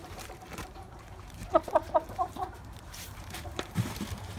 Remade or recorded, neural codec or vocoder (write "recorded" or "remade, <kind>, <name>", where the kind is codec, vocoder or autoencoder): remade, vocoder, BigVGAN v2